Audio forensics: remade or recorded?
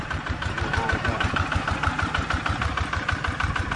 remade